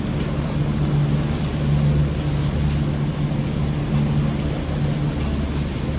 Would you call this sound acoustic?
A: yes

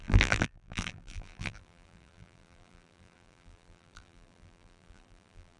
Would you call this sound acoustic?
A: no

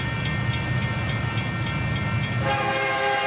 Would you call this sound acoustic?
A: yes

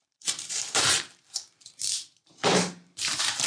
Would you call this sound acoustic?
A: no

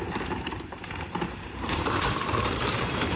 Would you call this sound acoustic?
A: no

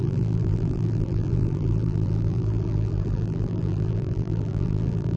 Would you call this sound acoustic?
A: no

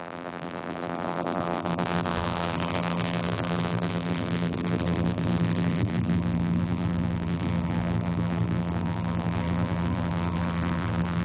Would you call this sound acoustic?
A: no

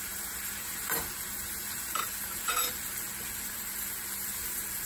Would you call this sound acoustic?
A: no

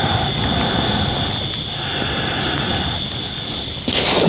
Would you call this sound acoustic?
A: yes